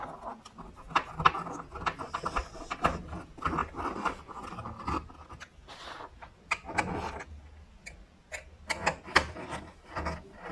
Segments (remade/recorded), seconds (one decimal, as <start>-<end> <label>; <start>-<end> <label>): 0.0-10.5 recorded